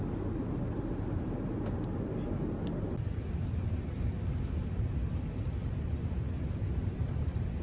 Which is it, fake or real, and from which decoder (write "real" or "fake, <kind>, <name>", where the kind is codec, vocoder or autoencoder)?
fake, vocoder, BigVGAN v2